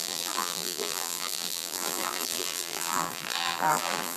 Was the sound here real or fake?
fake